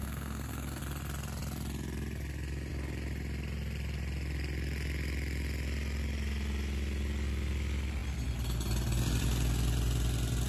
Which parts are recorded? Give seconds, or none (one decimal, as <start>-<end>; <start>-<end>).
0.8-10.5